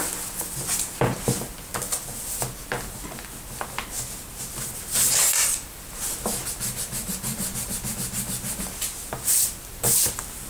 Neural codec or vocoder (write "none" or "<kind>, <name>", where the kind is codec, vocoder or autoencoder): none